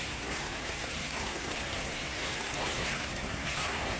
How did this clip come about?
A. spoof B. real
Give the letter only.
A